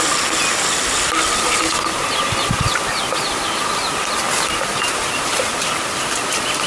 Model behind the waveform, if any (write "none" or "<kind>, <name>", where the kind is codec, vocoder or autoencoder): none